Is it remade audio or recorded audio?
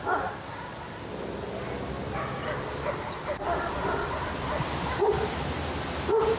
recorded